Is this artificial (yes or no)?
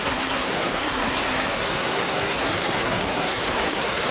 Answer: yes